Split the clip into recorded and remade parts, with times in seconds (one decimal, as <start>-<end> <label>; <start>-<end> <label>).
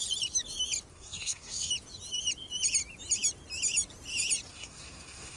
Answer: 0.0-0.9 recorded; 0.9-1.7 remade; 1.7-4.5 recorded; 4.5-5.4 remade